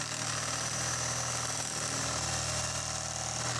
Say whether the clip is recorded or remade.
recorded